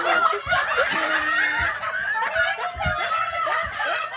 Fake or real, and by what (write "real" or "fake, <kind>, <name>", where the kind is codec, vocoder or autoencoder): real